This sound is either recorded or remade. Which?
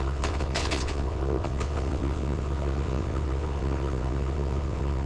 remade